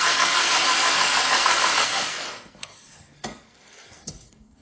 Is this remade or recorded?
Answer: remade